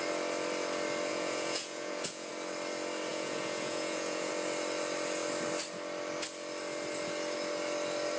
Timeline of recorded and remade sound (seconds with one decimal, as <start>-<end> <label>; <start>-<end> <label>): 0.0-1.1 recorded; 1.1-2.3 remade; 2.3-3.1 recorded; 3.1-4.3 remade; 4.3-8.2 recorded